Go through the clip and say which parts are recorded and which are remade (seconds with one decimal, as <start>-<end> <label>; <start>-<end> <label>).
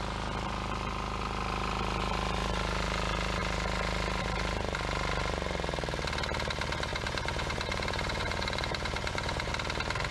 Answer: 0.0-6.9 recorded; 6.9-9.5 remade; 9.5-10.1 recorded